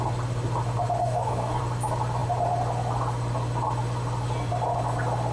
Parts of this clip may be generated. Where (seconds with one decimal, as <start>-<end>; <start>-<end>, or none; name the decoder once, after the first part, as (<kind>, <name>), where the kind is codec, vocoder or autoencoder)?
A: 1.0-1.6 (codec, DAC)